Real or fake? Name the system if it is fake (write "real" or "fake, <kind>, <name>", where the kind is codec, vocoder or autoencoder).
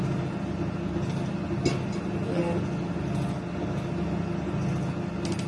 real